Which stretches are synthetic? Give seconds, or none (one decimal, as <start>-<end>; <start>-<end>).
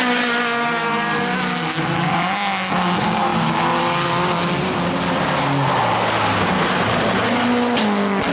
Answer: none